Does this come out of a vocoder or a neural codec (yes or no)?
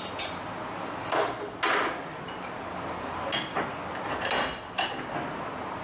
no